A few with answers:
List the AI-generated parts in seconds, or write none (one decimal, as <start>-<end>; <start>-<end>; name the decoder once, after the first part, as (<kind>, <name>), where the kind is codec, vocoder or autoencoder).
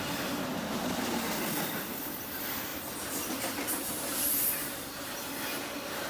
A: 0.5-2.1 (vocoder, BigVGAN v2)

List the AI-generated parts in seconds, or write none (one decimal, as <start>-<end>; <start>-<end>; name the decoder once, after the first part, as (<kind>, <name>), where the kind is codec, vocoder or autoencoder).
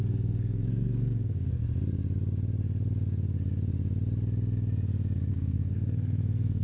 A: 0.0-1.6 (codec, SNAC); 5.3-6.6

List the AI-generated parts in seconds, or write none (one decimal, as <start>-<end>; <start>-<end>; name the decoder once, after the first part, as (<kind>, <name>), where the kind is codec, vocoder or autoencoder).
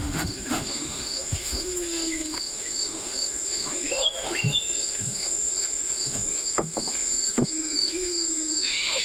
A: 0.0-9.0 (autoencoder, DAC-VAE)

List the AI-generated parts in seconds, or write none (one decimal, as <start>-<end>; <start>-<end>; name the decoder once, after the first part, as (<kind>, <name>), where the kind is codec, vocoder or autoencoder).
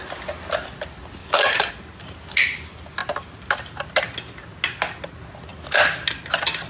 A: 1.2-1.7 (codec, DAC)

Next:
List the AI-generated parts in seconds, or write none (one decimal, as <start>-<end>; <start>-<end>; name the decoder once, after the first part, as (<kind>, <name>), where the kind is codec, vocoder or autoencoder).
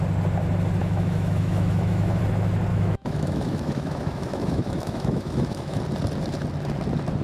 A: 0.8-2.2 (autoencoder, DAC-VAE); 2.7-5.8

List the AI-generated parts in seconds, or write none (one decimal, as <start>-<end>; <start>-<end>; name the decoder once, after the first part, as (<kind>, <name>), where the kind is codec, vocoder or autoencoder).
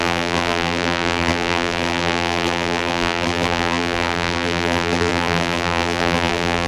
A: 0.0-6.7 (vocoder, BigVGAN v2)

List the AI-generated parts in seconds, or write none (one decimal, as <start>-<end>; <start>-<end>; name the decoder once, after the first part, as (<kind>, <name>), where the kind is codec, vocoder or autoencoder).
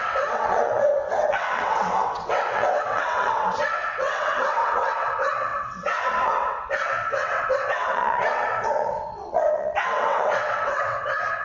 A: 0.0-11.4 (vocoder, WaveNeXt)